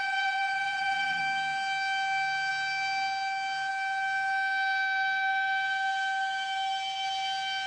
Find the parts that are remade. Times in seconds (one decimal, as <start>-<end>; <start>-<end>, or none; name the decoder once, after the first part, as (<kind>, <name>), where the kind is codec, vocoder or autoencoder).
0.0-1.2 (vocoder, BigVGAN v2)